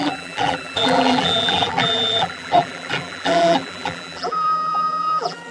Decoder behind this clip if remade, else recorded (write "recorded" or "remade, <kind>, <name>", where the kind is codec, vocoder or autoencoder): remade, vocoder, BigVGAN v2